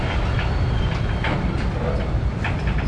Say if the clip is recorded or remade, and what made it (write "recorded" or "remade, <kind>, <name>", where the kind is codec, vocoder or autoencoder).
recorded